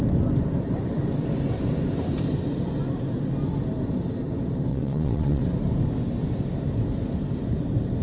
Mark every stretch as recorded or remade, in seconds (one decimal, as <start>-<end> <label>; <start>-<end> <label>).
0.0-4.7 recorded; 4.7-5.4 remade; 5.4-8.0 recorded